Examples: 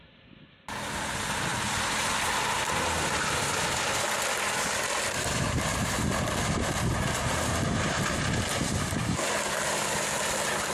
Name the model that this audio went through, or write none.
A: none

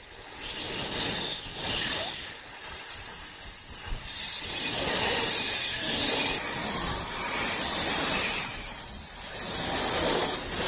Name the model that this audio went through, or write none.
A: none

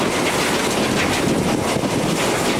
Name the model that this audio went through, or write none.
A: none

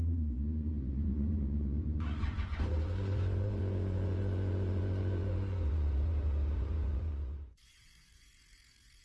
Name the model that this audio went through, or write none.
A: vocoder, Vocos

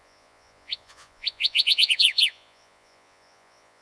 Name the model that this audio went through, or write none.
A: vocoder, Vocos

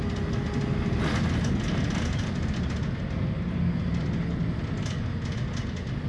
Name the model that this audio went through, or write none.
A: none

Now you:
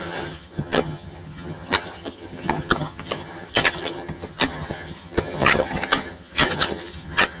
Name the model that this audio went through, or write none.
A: vocoder, HiFi-GAN